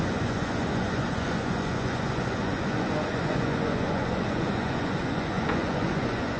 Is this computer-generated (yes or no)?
yes